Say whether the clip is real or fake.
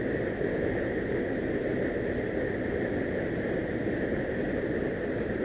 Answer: real